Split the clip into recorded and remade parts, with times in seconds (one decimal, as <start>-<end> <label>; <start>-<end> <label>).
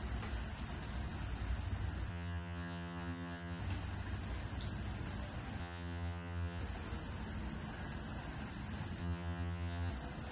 0.0-2.1 recorded; 2.1-3.6 remade; 3.6-5.6 recorded; 5.6-6.6 remade; 6.6-9.0 recorded; 9.0-9.9 remade; 9.9-10.3 recorded